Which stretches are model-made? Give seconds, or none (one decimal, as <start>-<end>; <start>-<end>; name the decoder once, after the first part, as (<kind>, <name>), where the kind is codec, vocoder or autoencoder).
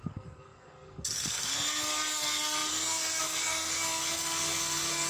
0.0-5.1 (codec, SNAC)